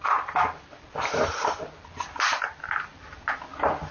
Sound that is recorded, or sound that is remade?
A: recorded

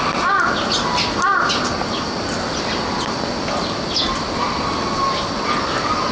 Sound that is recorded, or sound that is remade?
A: recorded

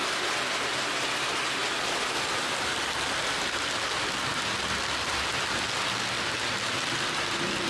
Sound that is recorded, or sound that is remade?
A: recorded